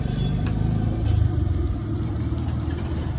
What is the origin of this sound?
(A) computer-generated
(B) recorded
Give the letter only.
A